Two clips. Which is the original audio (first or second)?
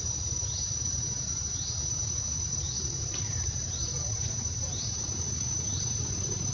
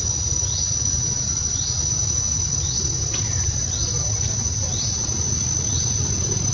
second